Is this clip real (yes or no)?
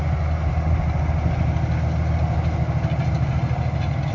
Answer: yes